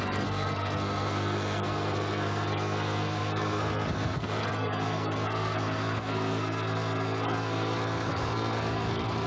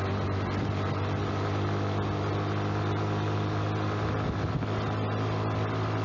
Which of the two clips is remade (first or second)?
first